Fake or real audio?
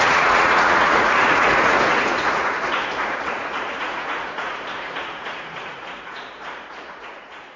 fake